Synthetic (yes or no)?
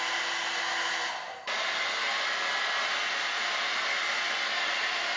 no